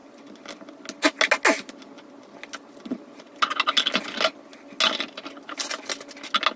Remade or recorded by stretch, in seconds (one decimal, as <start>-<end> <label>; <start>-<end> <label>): 0.0-6.6 recorded

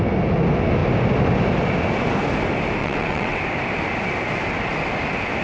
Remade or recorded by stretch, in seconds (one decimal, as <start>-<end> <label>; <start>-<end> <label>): 0.0-2.8 recorded; 2.8-3.4 remade; 3.4-5.4 recorded

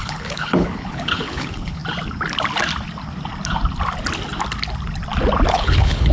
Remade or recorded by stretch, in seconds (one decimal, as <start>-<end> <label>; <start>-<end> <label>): 0.0-1.8 remade; 1.8-5.5 recorded; 5.5-6.1 remade

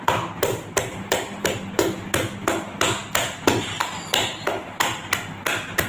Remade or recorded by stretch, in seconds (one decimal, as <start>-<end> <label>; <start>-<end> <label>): 0.0-5.9 recorded

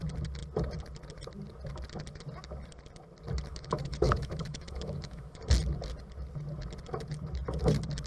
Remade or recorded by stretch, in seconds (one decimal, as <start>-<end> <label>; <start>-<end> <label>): 0.0-3.5 recorded; 3.5-5.4 remade; 5.4-8.1 recorded

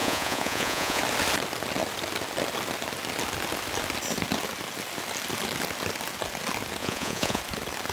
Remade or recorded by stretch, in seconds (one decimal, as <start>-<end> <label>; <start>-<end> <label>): 0.0-1.0 remade; 1.0-6.8 recorded; 6.8-7.4 remade; 7.4-7.9 recorded